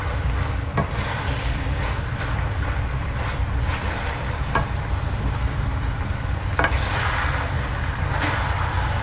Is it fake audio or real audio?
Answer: fake